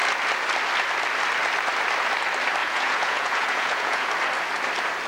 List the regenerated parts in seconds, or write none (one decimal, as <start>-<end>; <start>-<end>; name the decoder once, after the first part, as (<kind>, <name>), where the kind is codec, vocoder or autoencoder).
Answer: 2.6-4.1 (vocoder, Vocos)